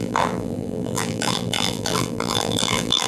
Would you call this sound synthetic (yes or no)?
yes